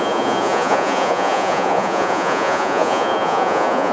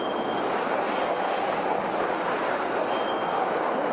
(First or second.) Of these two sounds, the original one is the second